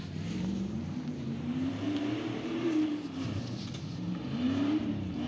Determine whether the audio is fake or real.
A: fake